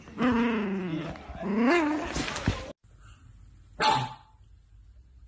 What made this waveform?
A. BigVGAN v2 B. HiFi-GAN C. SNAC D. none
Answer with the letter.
D